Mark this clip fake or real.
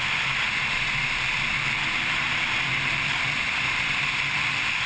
fake